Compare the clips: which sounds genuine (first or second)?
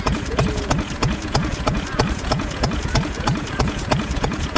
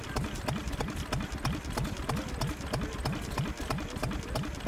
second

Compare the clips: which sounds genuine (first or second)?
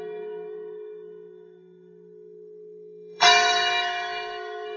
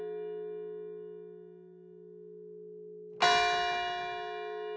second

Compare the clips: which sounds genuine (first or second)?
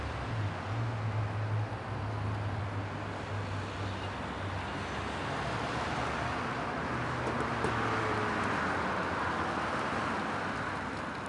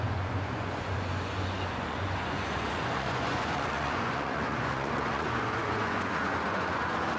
first